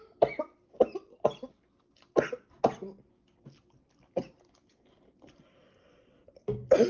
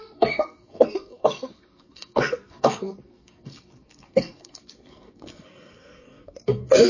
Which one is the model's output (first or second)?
second